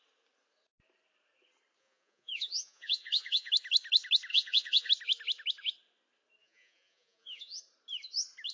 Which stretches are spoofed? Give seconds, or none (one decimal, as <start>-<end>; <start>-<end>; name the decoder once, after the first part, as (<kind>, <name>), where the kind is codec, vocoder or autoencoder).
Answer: 1.8-3.5 (vocoder, Vocos); 4.3-4.9; 6.4-7.6